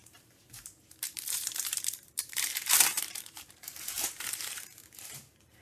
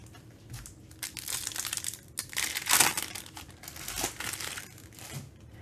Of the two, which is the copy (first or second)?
first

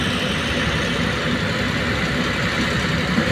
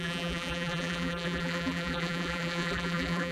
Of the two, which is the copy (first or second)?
second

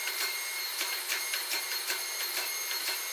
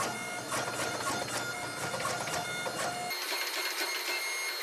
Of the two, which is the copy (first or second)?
first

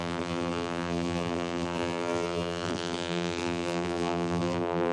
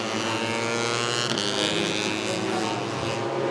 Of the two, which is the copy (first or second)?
first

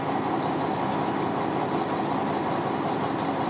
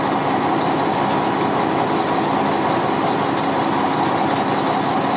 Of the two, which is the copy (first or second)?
first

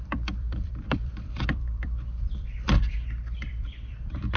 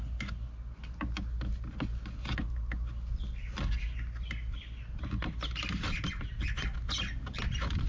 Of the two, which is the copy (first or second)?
first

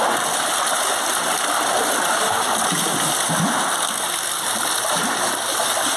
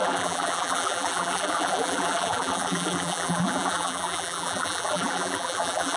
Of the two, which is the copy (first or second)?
second